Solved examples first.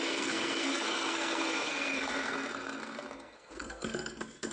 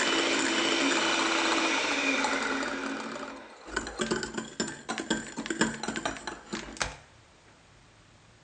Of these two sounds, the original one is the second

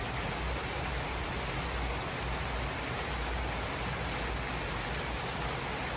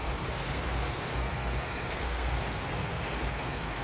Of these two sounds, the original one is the first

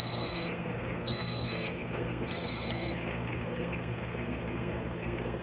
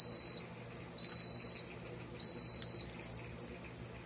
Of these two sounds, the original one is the second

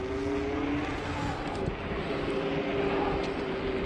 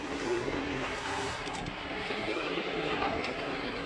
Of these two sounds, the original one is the first